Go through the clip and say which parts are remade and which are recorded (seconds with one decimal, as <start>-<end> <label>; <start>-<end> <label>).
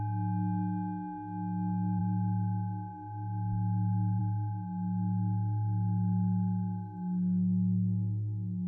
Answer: 0.0-8.7 recorded